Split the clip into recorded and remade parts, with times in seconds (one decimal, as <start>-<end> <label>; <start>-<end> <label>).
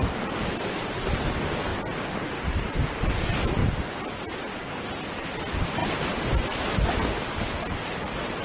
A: 0.0-8.4 recorded